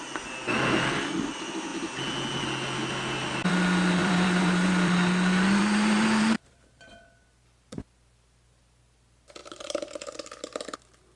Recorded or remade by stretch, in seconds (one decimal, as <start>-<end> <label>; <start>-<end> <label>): 0.0-4.0 recorded; 4.0-4.7 remade; 4.7-5.6 recorded; 5.6-6.9 remade; 6.9-9.4 recorded; 9.4-10.0 remade; 10.0-11.2 recorded